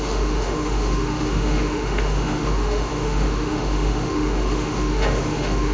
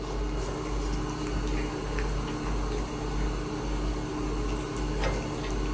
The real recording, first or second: second